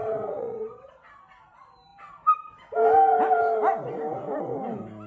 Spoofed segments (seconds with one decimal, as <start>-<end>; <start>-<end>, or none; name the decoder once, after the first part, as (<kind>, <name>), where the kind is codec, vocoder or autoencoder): 0.0-0.9 (vocoder, WaveNeXt)